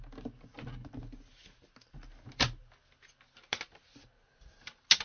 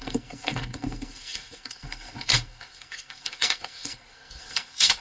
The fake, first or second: second